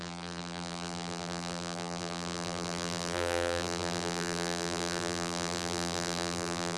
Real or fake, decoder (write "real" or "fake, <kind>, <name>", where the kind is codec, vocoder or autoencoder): fake, vocoder, BigVGAN v2